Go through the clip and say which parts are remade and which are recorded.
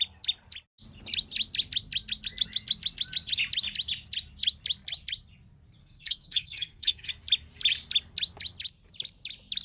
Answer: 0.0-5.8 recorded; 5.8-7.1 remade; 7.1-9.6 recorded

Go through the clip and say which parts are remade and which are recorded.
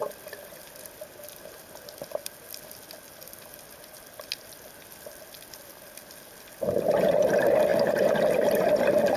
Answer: 0.0-9.2 recorded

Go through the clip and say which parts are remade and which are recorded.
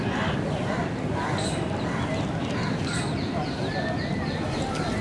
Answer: 0.0-5.0 recorded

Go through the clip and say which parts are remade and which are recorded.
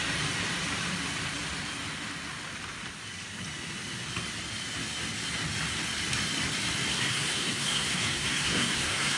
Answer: 0.0-6.9 recorded; 6.9-9.2 remade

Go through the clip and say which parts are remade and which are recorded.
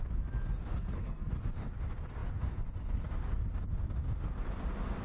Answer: 0.0-0.7 recorded; 0.7-1.3 remade; 1.3-5.0 recorded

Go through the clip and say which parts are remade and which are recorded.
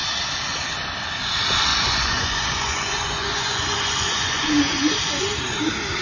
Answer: 0.0-1.7 recorded; 1.7-5.3 remade; 5.3-6.0 recorded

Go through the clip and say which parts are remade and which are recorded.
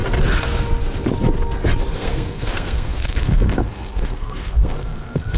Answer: 0.0-1.9 recorded; 1.9-5.4 remade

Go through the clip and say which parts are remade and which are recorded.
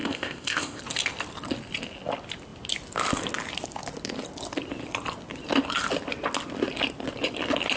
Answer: 0.0-0.8 remade; 0.8-7.8 recorded